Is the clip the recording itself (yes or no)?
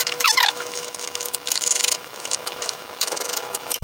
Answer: no